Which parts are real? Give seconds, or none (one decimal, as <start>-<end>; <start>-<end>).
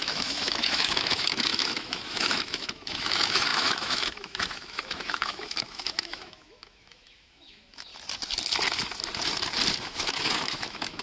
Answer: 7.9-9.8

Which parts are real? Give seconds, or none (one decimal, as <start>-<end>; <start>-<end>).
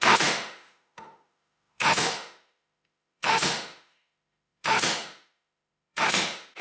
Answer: none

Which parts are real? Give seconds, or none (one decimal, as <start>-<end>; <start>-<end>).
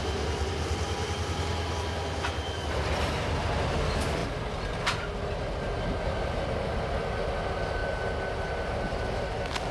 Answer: 0.0-9.7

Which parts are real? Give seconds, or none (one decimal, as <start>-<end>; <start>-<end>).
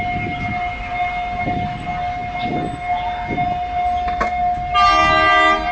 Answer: 0.0-5.7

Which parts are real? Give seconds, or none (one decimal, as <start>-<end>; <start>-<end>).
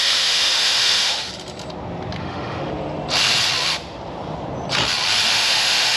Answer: 1.3-2.2; 2.7-5.3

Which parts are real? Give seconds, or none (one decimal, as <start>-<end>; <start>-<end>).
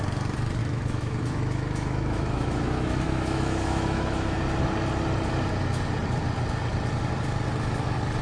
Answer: 0.0-0.6; 4.4-8.2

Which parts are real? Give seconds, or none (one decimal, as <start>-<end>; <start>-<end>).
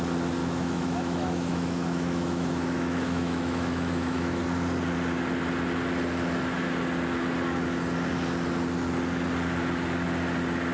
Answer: 0.0-0.4; 4.4-10.7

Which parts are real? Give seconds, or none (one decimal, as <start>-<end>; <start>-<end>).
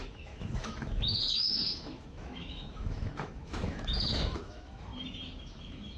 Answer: 4.9-5.4